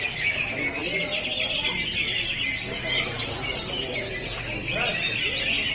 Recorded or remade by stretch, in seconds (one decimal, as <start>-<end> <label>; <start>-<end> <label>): 0.0-5.7 recorded